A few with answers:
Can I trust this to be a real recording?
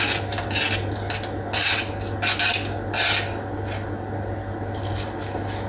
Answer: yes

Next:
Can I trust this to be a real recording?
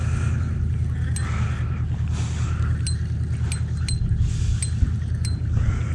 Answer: yes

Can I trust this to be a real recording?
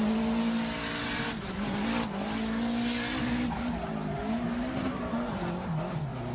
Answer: yes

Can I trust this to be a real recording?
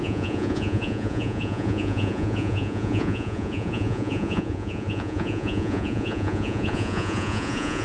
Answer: no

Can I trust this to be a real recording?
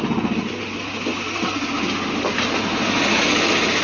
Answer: yes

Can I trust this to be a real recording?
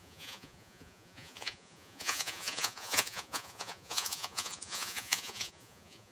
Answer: no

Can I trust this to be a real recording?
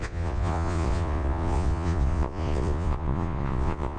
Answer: no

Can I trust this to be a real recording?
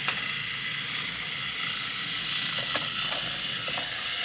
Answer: yes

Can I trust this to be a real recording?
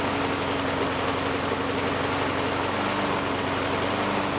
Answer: yes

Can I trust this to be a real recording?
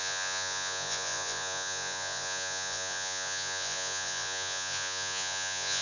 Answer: no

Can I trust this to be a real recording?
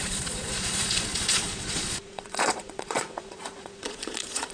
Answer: no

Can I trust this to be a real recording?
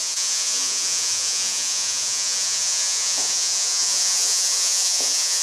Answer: no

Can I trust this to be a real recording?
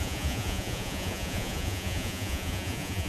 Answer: no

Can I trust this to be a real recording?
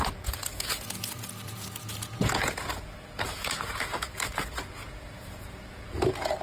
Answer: no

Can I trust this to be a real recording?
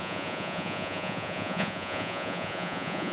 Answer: no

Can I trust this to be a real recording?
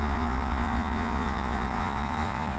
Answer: no